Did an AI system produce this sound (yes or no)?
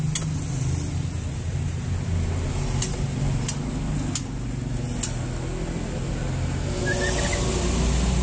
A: no